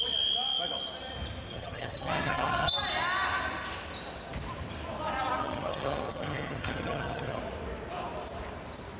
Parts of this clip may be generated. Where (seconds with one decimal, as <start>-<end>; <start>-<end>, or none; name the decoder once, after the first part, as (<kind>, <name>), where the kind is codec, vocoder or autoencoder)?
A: 1.5-2.7 (vocoder, HiFi-GAN); 5.4-7.4